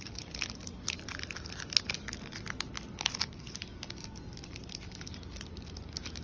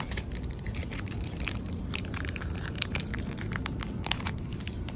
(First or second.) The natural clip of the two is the first